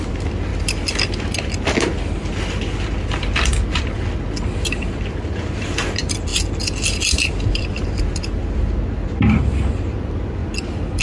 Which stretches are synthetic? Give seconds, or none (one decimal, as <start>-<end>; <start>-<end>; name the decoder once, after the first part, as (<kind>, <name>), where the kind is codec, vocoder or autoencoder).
none